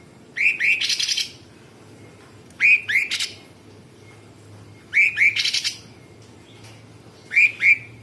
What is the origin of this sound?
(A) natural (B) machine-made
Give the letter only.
A